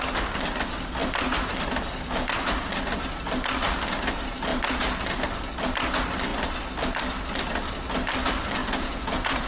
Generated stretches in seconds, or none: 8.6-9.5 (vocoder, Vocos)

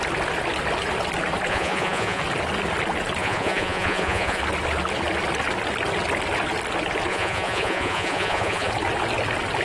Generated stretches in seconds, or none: 1.5-2.2 (vocoder, Vocos); 3.2-4.4; 7.1-8.7

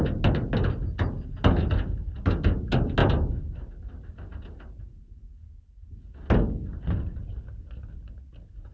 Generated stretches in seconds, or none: none

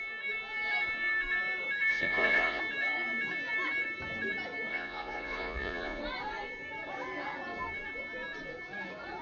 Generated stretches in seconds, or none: 1.9-2.6 (vocoder, Vocos); 4.7-6.0

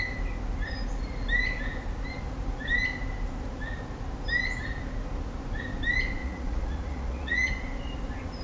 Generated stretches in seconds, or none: 6.2-7.5 (vocoder, Vocos)

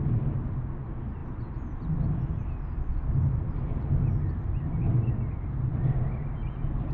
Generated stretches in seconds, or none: none

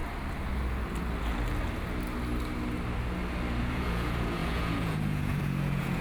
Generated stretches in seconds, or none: 3.6-6.0 (vocoder, Vocos)

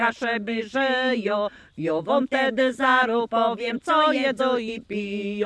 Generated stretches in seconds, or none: none